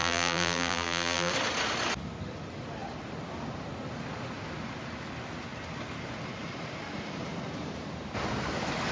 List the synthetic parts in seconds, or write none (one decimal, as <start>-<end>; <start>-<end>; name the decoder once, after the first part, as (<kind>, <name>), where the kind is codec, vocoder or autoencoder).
0.0-1.3 (vocoder, BigVGAN v2)